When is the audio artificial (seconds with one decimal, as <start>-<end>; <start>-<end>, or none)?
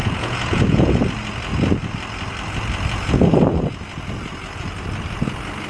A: 0.0-1.0